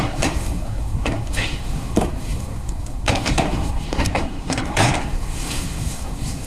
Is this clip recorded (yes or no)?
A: no